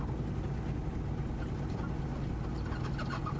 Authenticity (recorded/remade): recorded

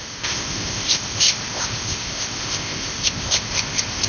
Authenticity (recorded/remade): remade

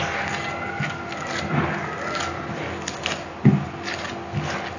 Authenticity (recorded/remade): recorded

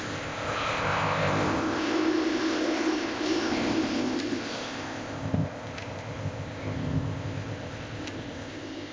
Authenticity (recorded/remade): remade